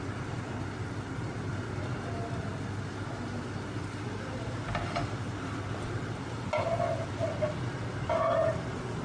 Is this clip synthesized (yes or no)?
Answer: no